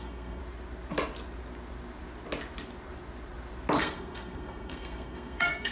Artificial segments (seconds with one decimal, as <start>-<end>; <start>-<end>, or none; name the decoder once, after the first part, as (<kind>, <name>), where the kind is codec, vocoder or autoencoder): 0.0-0.4 (codec, SNAC); 3.8-5.7